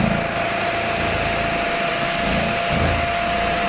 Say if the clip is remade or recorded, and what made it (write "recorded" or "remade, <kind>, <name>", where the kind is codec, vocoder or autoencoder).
recorded